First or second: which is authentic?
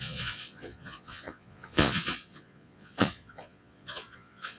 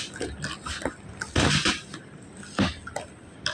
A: second